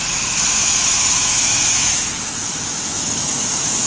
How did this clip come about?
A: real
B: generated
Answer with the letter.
B